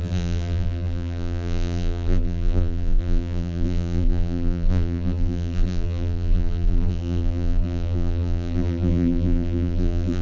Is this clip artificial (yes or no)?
yes